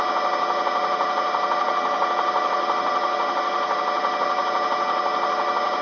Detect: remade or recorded recorded